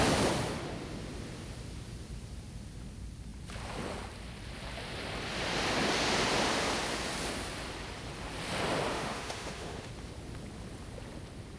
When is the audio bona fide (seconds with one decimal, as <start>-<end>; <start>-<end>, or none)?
0.0-8.9; 9.9-11.6